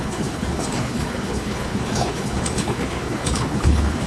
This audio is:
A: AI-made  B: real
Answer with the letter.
A